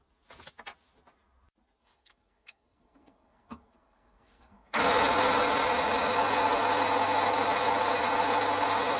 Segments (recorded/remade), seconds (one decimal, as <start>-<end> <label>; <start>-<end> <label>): 0.0-1.8 recorded; 1.8-4.8 remade; 4.8-9.0 recorded